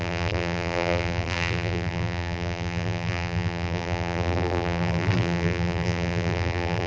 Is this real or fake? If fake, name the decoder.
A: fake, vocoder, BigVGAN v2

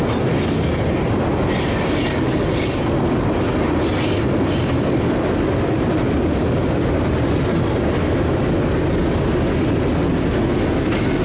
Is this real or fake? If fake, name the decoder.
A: real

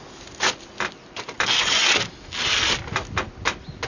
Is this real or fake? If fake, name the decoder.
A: real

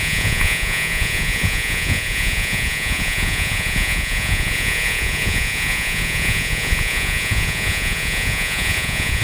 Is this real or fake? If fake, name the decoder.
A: fake, vocoder, Vocos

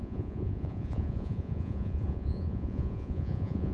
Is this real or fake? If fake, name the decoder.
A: fake, vocoder, Vocos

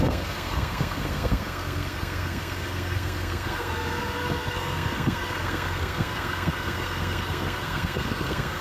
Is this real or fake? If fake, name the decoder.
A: fake, codec, SNAC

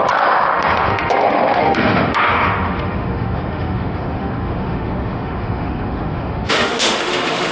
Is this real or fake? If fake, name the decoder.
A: fake, autoencoder, DAC-VAE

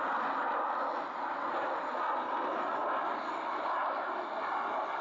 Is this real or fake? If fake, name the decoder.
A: real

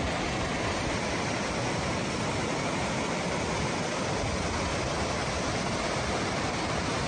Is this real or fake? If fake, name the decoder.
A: real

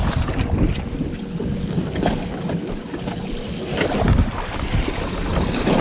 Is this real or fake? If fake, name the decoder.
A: real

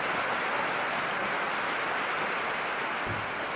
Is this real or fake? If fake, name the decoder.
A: real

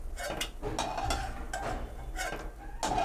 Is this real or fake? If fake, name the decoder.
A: real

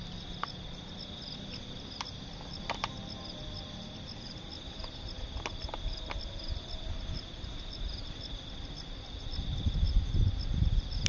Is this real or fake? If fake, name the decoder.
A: real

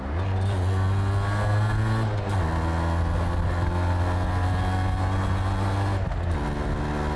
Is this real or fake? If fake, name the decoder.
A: real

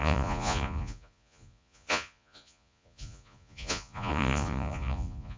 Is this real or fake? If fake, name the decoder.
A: fake, vocoder, Vocos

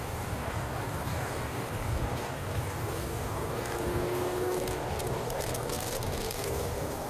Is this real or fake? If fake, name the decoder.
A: fake, codec, DAC